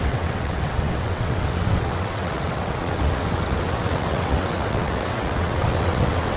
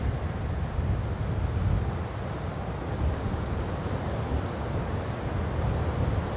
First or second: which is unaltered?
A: second